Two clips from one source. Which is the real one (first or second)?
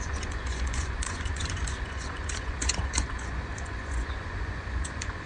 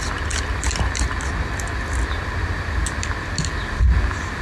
second